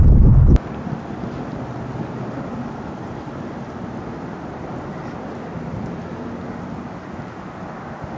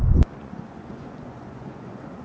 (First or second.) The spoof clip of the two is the second